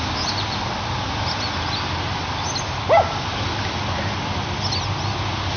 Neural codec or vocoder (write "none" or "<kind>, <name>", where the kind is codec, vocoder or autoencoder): none